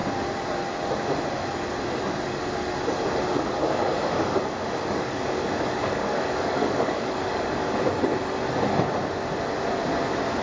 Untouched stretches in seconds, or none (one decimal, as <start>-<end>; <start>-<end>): 0.0-3.6; 7.7-10.4